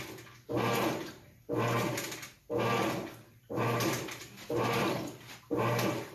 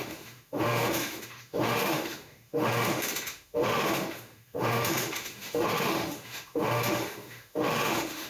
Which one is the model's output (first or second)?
second